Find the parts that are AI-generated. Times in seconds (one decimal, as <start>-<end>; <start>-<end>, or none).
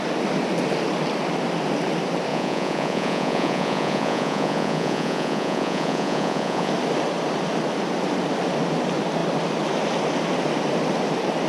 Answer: 2.3-6.7